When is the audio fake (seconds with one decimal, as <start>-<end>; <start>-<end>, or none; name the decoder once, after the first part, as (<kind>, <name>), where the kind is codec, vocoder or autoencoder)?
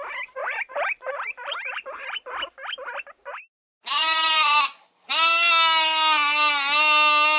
0.4-2.3 (vocoder, BigVGAN v2); 4.0-5.1